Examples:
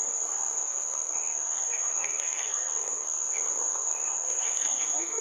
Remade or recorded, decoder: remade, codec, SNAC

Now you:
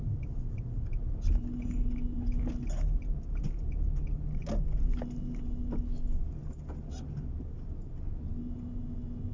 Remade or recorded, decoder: recorded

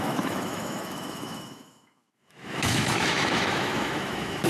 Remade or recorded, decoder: remade, autoencoder, DAC-VAE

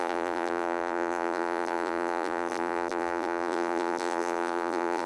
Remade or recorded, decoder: remade, vocoder, BigVGAN v2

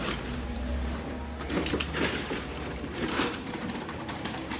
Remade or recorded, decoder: remade, vocoder, BigVGAN v2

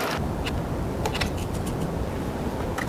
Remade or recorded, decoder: recorded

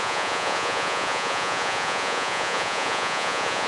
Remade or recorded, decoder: remade, vocoder, Vocos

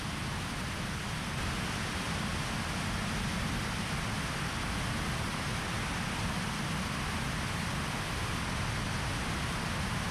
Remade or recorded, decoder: recorded